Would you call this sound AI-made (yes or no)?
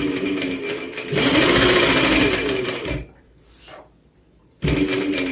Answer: no